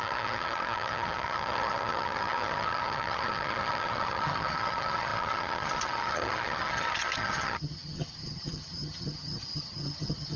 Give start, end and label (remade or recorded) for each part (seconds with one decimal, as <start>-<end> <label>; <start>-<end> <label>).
0.0-10.4 remade